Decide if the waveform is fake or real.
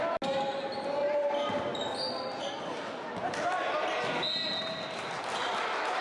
real